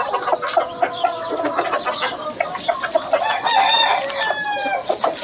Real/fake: real